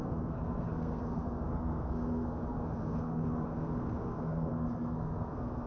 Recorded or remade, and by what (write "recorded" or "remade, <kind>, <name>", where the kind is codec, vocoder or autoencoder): remade, codec, SNAC